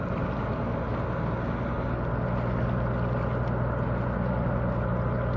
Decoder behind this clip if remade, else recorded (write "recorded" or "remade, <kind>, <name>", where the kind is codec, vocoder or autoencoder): recorded